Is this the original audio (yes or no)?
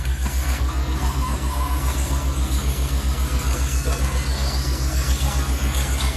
no